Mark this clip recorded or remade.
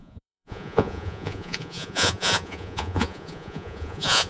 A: remade